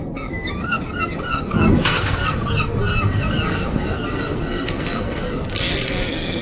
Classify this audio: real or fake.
fake